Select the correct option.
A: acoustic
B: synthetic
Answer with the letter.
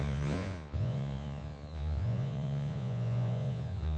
B